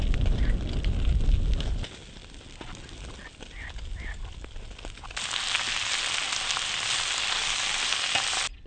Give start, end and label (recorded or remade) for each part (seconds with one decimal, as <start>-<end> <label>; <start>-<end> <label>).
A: 0.0-8.7 recorded